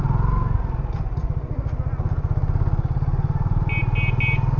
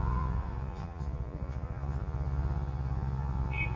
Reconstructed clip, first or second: second